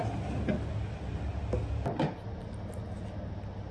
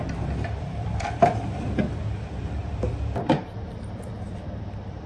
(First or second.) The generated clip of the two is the second